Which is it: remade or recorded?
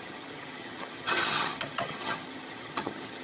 remade